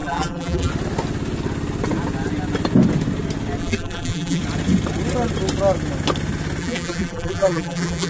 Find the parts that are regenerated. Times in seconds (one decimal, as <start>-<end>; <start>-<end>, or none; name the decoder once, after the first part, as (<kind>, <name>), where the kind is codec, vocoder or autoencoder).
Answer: 0.0-0.7 (vocoder, BigVGAN v2); 3.6-4.4; 6.6-8.1